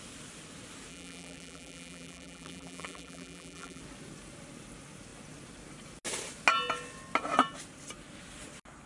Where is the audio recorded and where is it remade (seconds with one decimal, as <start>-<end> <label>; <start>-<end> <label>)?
0.0-0.9 recorded; 0.9-3.8 remade; 3.8-8.9 recorded